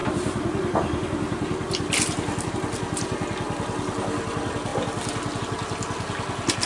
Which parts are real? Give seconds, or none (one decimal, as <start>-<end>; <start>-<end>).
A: 0.0-6.7